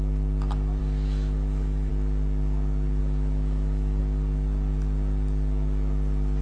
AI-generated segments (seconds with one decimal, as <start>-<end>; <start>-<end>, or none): 0.8-1.9; 3.0-4.0